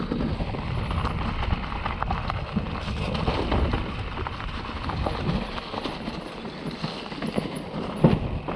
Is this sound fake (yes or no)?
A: no